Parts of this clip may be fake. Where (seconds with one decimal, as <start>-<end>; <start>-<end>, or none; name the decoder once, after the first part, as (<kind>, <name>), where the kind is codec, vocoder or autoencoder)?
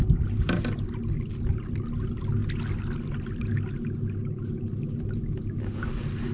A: none